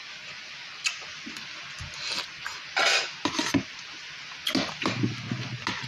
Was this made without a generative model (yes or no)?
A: yes